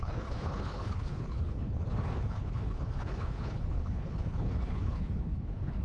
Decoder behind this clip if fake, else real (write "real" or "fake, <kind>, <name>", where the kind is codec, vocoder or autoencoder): fake, codec, HILCodec